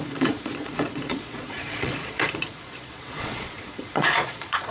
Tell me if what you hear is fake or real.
fake